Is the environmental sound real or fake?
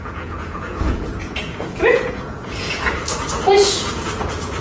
fake